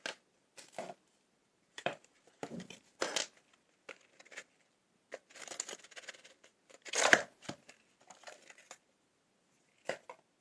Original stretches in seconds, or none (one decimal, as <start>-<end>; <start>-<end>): 0.0-1.4; 3.0-10.4